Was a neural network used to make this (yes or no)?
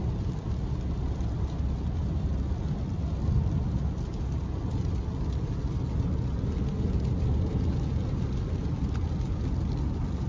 no